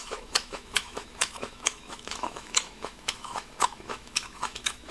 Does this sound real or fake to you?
fake